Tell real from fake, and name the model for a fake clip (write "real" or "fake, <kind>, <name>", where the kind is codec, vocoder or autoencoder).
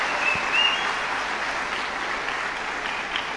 real